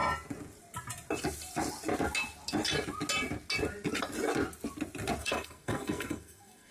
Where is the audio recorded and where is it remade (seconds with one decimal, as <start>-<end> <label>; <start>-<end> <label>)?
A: 0.0-5.2 recorded; 5.2-6.7 remade